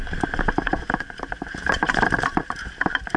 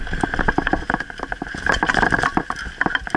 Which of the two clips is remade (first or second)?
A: first